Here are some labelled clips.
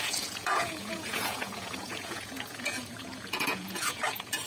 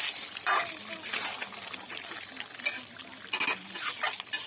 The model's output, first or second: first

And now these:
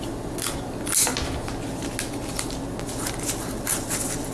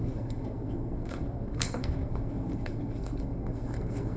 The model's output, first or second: second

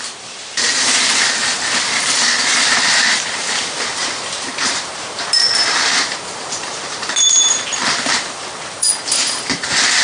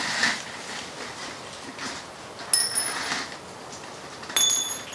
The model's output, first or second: first